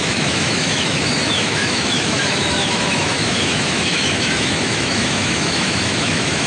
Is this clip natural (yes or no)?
no